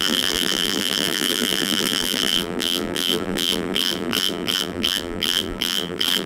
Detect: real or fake fake